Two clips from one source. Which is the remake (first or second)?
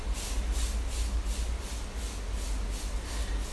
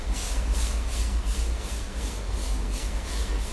second